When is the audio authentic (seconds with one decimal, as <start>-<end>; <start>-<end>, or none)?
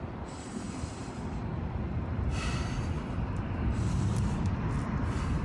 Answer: 1.0-3.3